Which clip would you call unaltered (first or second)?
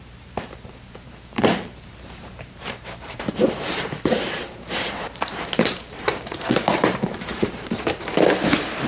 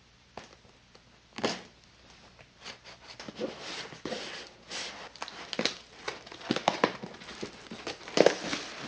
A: second